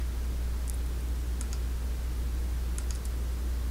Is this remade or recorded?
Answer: recorded